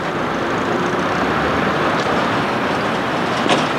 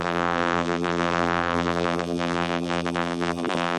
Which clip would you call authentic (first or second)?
first